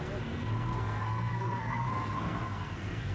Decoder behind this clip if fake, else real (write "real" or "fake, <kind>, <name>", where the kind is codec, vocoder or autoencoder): fake, codec, SNAC